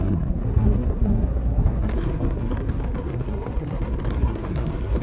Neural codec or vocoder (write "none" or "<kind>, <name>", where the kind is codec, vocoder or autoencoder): codec, SNAC